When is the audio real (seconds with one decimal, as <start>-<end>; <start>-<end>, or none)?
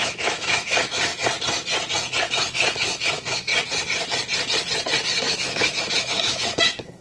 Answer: 1.1-2.2; 3.5-5.2